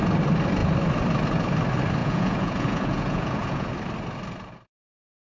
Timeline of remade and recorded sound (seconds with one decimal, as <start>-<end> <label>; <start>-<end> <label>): 0.0-2.0 recorded; 2.0-3.7 remade; 3.7-5.3 recorded